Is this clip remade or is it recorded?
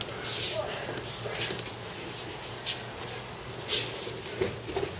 recorded